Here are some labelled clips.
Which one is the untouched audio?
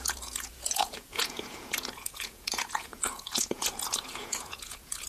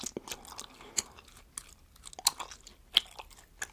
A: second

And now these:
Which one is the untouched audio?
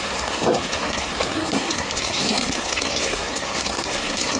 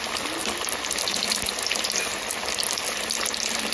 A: second